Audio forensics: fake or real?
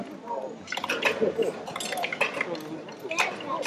real